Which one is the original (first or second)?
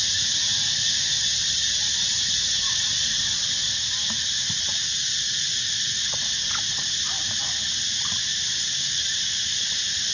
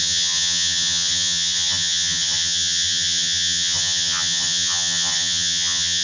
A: first